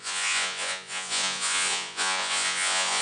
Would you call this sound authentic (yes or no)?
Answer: no